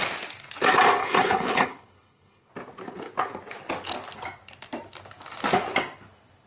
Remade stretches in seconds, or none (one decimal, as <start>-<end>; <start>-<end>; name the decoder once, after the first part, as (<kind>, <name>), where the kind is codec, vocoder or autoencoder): 1.0-2.5 (codec, HILCodec)